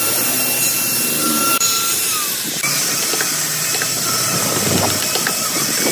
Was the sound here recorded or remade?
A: recorded